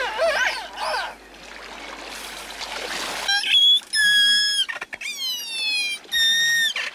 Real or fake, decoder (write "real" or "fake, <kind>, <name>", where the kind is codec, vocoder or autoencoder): real